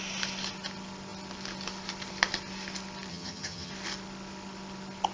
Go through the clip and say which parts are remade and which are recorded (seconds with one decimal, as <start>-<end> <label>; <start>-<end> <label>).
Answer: 0.0-3.1 recorded; 3.1-3.7 remade; 3.7-5.1 recorded